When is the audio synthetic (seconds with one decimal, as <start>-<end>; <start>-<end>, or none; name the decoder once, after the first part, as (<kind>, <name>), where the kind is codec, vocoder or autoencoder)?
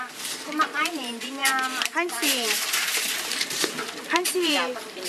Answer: 0.0-5.1 (vocoder, BigVGAN v2)